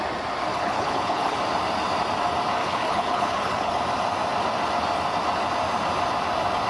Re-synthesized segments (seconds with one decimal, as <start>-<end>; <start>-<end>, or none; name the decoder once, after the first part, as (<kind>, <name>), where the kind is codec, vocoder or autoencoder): 0.5-1.4 (codec, HILCodec); 2.6-3.7